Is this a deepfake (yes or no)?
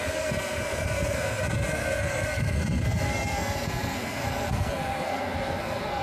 yes